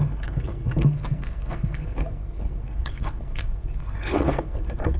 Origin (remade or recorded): remade